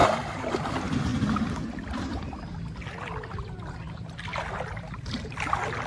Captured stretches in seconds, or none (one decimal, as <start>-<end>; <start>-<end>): 0.0-5.9